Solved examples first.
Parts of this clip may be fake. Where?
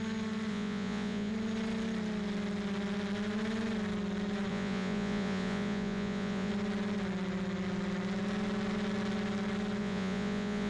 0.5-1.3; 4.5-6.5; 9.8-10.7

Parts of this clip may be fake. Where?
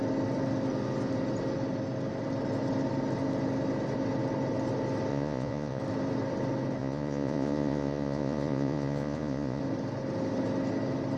5.1-5.8; 6.8-9.6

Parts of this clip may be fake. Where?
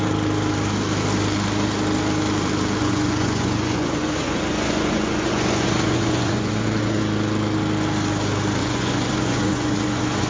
2.8-7.0; 8.6-10.3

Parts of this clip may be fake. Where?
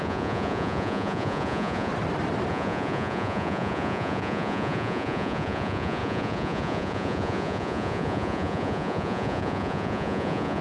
0.0-1.9; 2.5-10.6